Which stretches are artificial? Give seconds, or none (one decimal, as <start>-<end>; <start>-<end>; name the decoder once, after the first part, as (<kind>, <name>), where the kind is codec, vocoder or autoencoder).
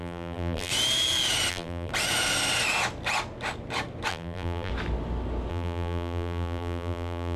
0.0-0.7 (vocoder, BigVGAN v2); 1.5-1.9; 4.1-4.7; 5.5-7.4